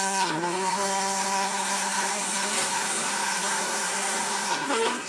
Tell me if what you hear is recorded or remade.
remade